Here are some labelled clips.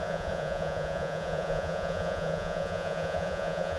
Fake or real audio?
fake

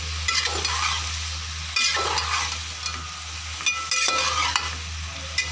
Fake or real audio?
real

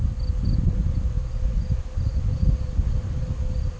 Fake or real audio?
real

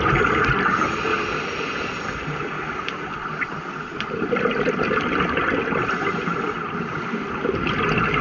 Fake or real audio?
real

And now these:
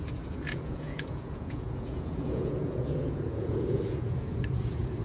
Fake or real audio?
fake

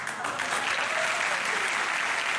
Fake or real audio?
real